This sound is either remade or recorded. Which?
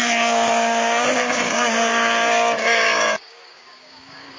remade